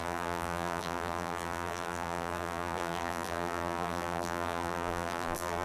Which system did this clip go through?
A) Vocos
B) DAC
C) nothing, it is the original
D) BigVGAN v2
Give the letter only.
D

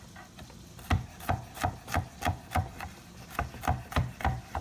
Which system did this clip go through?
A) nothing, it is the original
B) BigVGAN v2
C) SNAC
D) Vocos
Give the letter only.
A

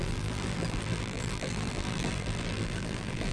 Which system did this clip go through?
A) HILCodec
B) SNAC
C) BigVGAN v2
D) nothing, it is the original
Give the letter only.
C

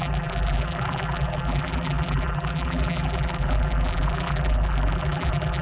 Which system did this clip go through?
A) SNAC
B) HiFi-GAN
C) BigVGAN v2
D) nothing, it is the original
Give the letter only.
C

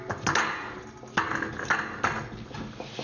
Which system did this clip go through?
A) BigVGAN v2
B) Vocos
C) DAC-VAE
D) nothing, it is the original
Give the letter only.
D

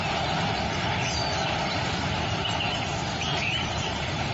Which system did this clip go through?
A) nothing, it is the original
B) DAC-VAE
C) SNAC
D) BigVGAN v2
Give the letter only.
D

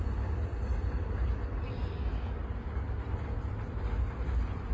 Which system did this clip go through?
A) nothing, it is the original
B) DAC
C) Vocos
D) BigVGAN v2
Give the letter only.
D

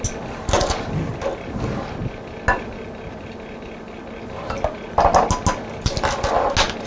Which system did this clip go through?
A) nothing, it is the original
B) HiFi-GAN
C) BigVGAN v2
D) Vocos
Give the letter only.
A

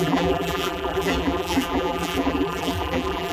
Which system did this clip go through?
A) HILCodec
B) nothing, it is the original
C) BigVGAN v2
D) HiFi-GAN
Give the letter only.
C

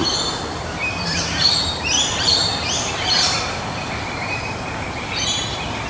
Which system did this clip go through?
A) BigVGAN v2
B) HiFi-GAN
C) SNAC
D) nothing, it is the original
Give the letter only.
A